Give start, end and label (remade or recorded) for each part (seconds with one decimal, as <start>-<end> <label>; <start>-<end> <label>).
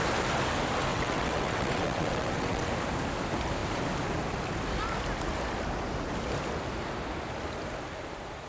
0.0-0.9 recorded; 0.9-2.7 remade; 2.7-8.5 recorded